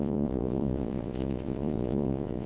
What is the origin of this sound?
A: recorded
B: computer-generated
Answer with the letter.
B